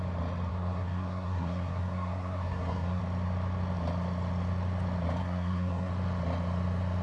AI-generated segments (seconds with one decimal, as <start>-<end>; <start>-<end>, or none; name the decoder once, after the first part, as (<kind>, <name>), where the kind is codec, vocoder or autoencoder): 0.5-3.0 (codec, SNAC); 5.2-5.9